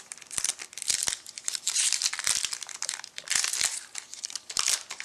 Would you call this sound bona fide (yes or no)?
no